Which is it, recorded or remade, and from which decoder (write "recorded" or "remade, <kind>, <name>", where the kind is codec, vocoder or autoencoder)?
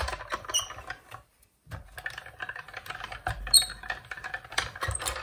recorded